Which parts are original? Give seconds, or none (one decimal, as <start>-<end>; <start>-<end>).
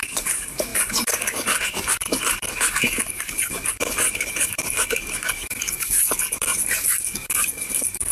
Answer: none